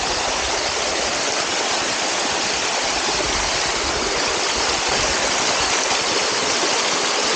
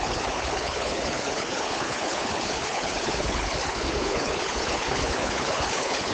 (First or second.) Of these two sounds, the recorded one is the first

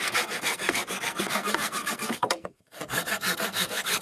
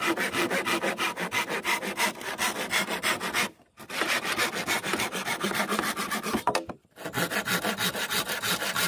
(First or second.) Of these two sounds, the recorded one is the second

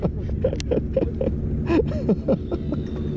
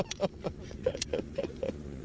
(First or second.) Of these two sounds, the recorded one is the first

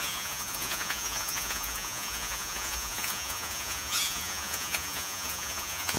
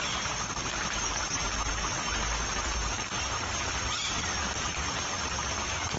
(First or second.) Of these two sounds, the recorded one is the second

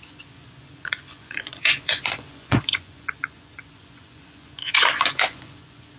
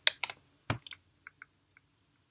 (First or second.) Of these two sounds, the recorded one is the second